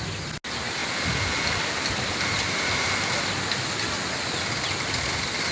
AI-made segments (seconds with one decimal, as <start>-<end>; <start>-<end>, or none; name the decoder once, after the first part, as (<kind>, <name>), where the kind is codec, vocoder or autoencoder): none